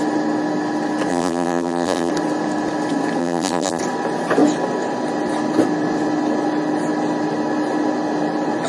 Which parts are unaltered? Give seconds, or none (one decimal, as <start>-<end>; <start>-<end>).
0.0-1.1; 2.1-3.2; 3.8-8.7